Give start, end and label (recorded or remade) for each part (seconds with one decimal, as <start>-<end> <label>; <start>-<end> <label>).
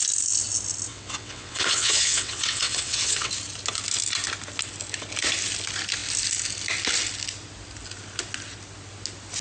0.0-0.9 recorded; 0.9-3.3 remade; 3.3-9.4 recorded